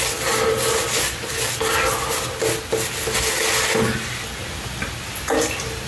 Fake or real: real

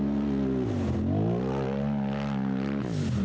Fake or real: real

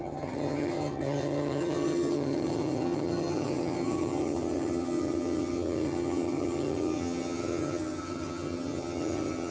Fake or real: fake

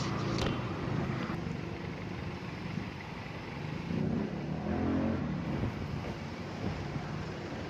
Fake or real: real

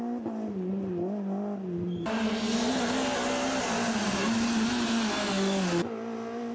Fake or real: real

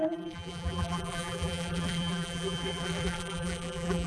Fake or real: fake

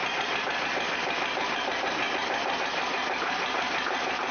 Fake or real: real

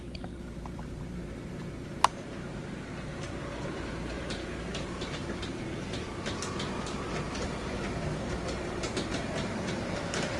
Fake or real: fake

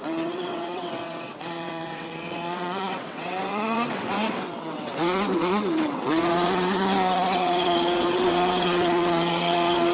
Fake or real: fake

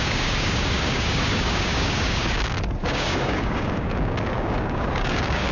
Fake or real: fake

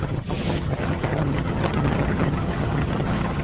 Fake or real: fake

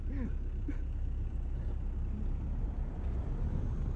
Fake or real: real